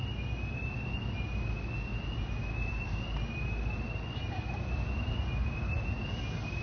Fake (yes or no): no